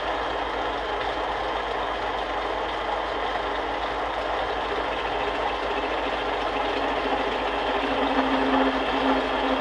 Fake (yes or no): no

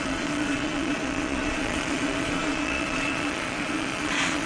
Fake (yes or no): yes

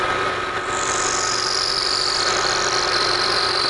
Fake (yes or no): no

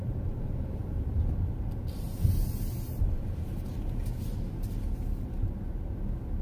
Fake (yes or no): no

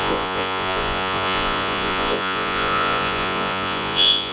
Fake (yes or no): yes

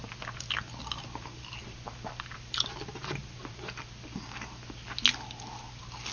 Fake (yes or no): no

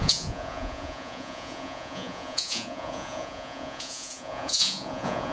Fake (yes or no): yes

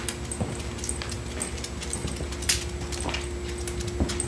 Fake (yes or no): no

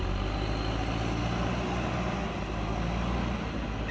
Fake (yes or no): no